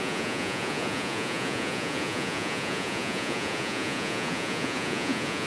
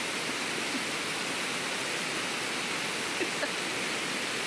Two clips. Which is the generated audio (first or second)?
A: first